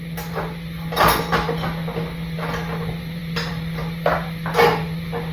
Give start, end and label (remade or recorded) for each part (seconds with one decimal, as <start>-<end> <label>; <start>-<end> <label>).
0.0-5.3 recorded

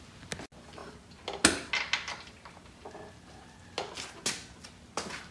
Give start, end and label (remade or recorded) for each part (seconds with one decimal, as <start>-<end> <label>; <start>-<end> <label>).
0.0-5.3 recorded

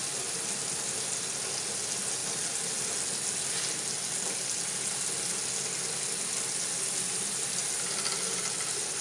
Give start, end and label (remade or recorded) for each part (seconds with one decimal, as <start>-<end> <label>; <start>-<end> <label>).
0.0-9.0 recorded